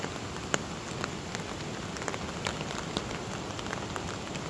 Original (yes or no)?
yes